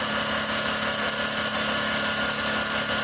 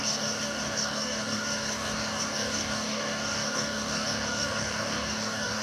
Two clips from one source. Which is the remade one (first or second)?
second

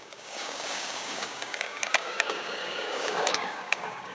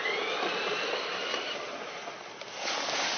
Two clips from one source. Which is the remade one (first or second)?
first